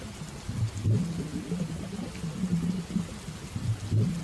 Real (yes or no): yes